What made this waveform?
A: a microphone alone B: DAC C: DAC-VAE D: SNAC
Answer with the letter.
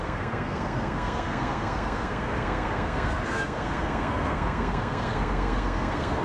D